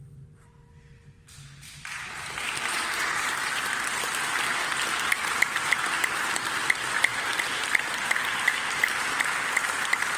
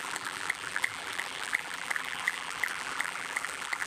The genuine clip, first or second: first